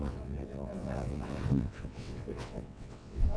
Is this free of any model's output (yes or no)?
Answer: no